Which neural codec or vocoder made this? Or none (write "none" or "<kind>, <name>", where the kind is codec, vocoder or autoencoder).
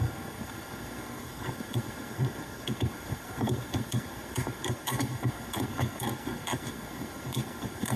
codec, SNAC